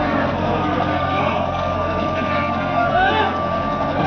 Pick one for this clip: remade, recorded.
remade